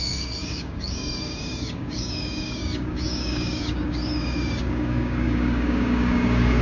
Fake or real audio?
fake